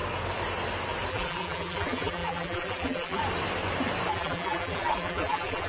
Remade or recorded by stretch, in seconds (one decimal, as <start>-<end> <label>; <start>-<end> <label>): 0.0-1.1 recorded; 1.1-3.2 remade; 3.2-4.1 recorded; 4.1-5.7 remade